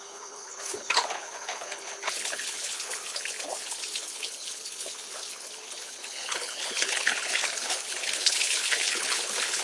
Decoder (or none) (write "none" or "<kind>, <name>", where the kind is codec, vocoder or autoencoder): codec, HILCodec